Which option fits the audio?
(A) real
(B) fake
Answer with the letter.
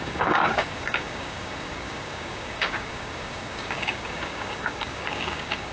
B